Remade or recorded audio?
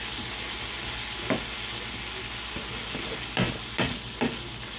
recorded